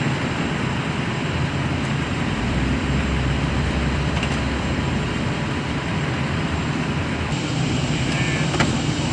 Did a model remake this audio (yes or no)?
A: yes